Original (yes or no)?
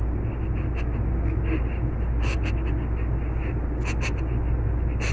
yes